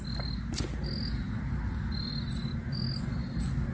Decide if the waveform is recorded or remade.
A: recorded